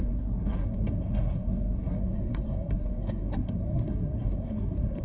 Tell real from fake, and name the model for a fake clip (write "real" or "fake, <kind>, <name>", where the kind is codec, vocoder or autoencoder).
fake, codec, SNAC